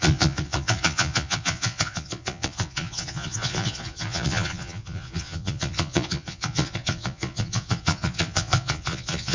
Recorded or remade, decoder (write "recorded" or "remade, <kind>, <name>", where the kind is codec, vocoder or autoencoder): remade, vocoder, Vocos